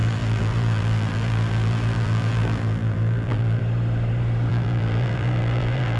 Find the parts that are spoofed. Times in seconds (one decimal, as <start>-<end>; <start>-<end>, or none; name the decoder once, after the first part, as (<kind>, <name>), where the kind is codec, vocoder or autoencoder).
0.0-3.6 (vocoder, BigVGAN v2); 4.5-6.0

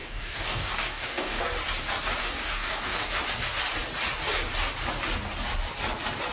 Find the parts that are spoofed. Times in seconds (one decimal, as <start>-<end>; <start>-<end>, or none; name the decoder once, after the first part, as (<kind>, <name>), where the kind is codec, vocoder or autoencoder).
0.0-1.4 (codec, DAC); 2.2-3.1

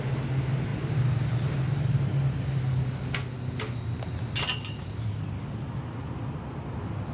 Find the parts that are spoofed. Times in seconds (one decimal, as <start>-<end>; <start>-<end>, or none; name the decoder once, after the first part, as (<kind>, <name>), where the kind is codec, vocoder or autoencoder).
none

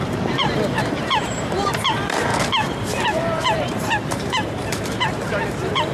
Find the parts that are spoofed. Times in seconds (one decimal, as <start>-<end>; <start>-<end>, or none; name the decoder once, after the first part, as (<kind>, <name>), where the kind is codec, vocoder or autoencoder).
0.0-2.3 (vocoder, BigVGAN v2); 2.8-5.9

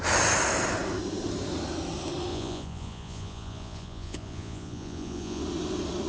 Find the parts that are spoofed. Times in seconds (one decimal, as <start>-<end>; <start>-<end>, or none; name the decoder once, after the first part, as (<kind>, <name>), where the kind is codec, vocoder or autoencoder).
2.3-5.4 (vocoder, Vocos)

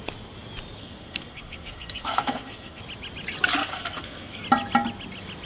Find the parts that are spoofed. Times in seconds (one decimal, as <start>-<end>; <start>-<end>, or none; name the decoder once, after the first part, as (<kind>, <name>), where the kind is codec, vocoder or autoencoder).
0.8-2.8 (codec, SNAC); 3.6-4.4

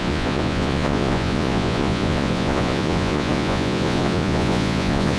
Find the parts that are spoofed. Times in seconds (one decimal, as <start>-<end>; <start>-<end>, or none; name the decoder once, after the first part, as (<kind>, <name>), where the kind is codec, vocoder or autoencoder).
0.0-5.2 (vocoder, Vocos)

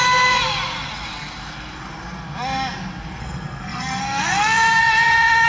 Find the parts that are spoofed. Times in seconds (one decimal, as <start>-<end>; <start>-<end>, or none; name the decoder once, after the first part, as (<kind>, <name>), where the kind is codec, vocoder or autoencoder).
3.2-4.8 (codec, SNAC)